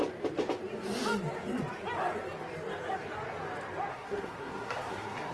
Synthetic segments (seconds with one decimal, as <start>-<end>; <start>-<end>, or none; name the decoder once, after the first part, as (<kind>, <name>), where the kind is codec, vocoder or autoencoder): 3.9-5.3 (codec, SNAC)